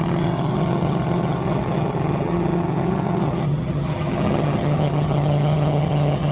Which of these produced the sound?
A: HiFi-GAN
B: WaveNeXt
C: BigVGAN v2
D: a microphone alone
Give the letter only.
A